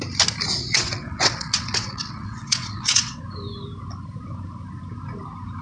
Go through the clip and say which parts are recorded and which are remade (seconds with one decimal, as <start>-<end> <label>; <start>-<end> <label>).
0.0-0.6 recorded; 0.6-3.2 remade; 3.2-5.6 recorded